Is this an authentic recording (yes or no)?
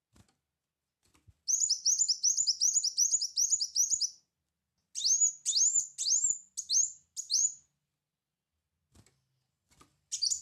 yes